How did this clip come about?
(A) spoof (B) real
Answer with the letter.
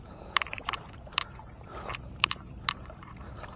A